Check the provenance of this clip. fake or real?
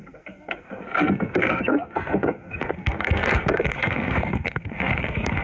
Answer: fake